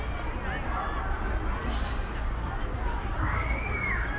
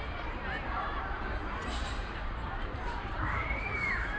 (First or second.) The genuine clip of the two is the first